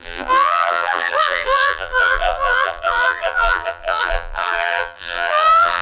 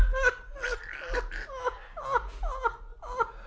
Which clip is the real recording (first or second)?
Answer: second